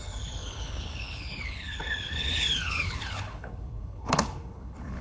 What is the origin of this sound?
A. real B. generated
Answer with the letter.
B